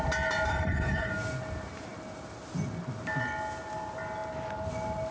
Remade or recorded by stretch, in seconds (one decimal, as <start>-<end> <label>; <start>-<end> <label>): 0.0-0.5 recorded; 0.5-1.1 remade; 1.1-5.1 recorded